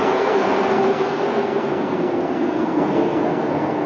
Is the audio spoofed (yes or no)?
yes